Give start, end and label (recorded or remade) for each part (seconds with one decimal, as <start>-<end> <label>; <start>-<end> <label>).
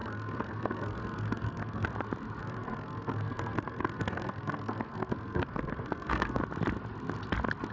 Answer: 0.0-1.9 remade; 1.9-2.4 recorded; 2.4-6.4 remade; 6.4-7.7 recorded